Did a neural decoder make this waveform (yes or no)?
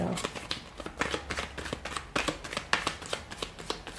no